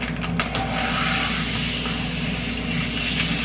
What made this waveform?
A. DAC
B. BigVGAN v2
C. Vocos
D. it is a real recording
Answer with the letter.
D